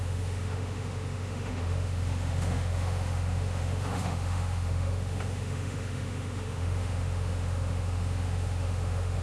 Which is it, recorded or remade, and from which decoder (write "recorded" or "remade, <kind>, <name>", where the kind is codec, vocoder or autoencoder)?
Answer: remade, autoencoder, DAC-VAE